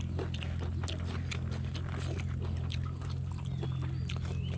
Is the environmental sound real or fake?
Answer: real